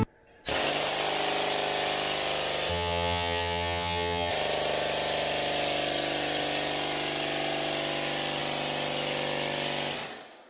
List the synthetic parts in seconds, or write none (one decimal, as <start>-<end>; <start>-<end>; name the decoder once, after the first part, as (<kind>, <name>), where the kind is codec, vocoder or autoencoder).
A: 2.7-4.3 (vocoder, HiFi-GAN)